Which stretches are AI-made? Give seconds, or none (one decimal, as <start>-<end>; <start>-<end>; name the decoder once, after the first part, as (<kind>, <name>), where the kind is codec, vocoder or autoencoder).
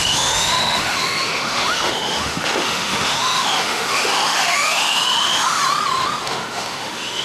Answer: 0.0-5.6 (autoencoder, DAC-VAE); 6.2-7.2